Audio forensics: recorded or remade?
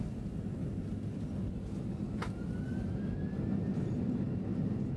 recorded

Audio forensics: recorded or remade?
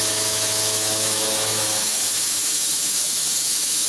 remade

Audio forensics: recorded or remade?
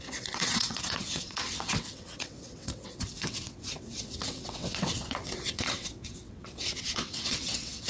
remade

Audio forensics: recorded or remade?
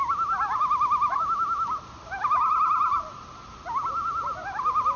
recorded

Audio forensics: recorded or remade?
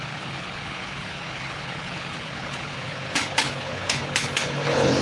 remade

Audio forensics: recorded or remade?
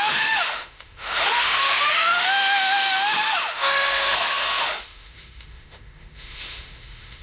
remade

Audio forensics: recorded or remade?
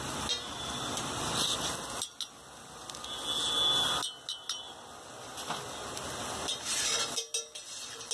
recorded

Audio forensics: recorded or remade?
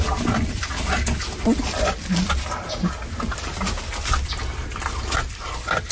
recorded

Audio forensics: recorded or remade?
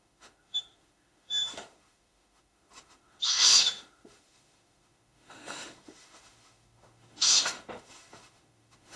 remade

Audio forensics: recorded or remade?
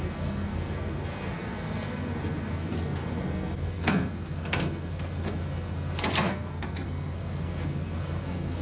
remade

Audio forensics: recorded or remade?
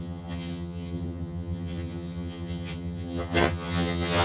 remade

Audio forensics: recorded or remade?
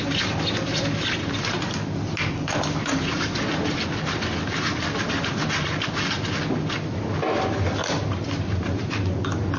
recorded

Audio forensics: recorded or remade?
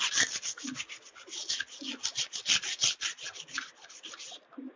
recorded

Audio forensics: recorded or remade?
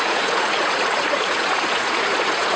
remade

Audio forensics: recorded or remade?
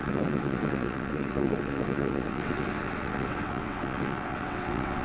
remade